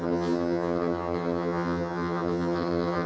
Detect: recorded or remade remade